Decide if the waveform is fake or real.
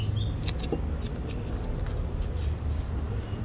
real